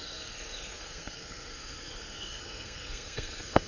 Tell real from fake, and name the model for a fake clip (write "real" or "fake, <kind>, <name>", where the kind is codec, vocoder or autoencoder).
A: fake, codec, SNAC